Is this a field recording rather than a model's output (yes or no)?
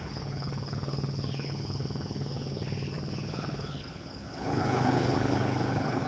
no